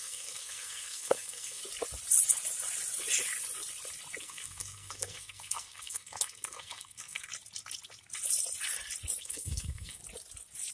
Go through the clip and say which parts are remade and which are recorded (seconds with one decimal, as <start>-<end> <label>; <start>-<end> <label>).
0.0-1.6 remade; 1.6-4.2 recorded; 4.2-7.3 remade; 7.3-9.2 recorded; 9.2-10.0 remade; 10.0-10.7 recorded